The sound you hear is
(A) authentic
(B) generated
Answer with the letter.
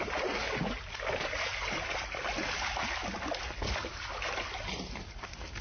A